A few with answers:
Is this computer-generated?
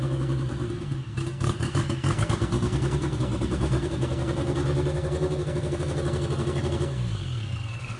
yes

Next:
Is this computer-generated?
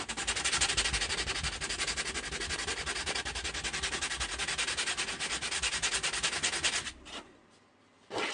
no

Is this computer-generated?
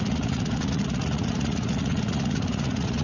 yes